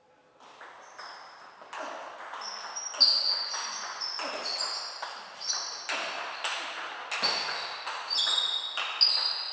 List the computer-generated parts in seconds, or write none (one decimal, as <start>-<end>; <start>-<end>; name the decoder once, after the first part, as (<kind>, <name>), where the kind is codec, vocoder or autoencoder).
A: 3.3-4.0 (vocoder, Vocos)